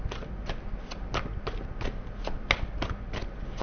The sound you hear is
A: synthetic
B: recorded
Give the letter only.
B